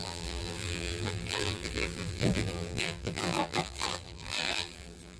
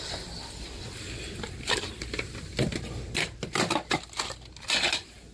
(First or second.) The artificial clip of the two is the first